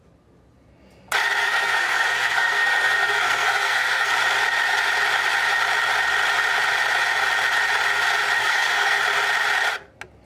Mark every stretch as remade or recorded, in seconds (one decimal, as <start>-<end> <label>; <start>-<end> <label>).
0.0-1.4 recorded; 1.4-4.1 remade; 4.1-8.4 recorded; 8.4-9.0 remade; 9.0-10.3 recorded

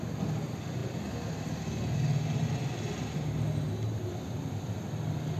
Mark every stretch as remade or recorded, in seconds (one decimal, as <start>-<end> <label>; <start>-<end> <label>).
0.0-5.4 recorded

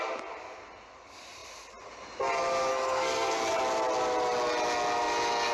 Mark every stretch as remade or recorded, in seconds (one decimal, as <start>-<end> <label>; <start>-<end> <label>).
0.0-2.7 recorded; 2.7-3.4 remade; 3.4-5.5 recorded

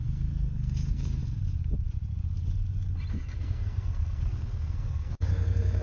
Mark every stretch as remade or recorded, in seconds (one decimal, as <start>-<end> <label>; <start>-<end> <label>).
0.0-1.2 remade; 1.2-3.1 recorded; 3.1-5.8 remade

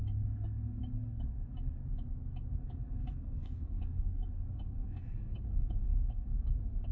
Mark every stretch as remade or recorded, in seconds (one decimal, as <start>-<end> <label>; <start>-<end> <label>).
0.0-1.8 remade; 1.8-2.5 recorded; 2.5-6.9 remade

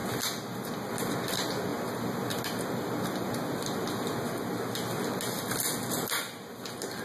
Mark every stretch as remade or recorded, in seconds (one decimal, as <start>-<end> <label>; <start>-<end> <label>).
0.0-7.0 recorded